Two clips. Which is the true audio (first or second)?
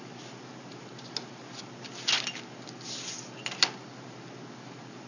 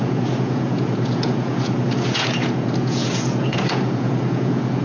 first